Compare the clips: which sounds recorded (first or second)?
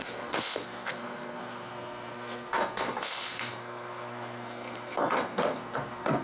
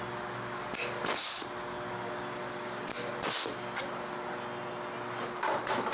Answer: second